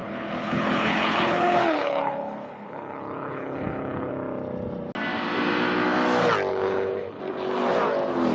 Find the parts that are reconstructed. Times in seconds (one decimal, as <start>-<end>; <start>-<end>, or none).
0.0-4.1; 6.5-7.2